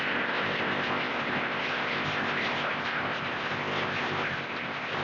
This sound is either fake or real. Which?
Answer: fake